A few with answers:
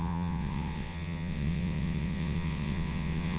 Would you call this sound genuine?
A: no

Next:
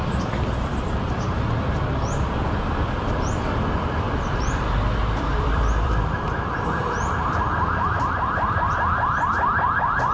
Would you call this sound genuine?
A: no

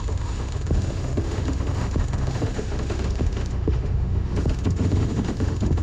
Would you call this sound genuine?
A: no